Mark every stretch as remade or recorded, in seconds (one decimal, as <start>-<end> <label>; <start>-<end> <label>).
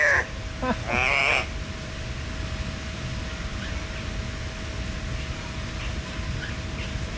0.0-7.2 recorded